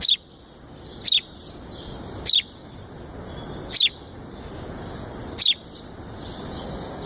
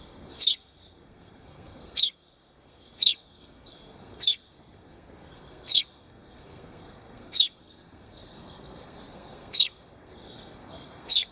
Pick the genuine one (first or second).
first